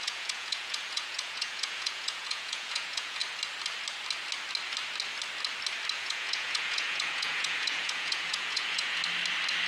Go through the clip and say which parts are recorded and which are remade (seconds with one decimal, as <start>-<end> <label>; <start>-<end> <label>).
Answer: 0.0-3.2 remade; 3.2-6.0 recorded; 6.0-9.0 remade; 9.0-9.7 recorded